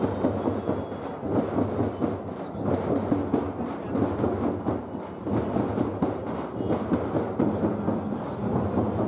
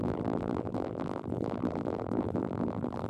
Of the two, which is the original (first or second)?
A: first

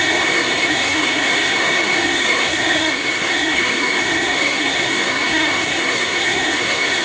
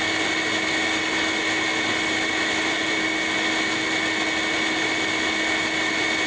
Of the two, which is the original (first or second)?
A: second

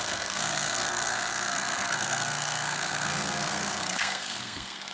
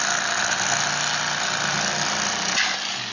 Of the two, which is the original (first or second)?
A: second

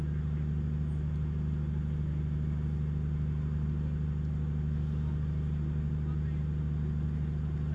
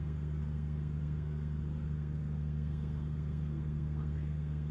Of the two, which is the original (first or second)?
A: first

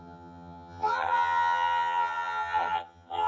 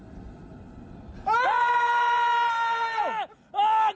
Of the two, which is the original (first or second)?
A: second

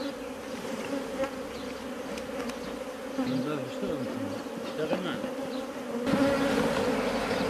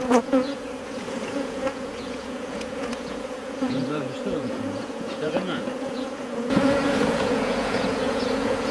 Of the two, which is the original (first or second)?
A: first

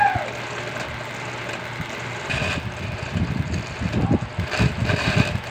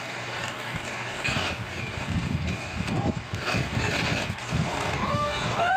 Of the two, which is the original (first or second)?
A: first